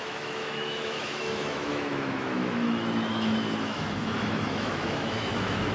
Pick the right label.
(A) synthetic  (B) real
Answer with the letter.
A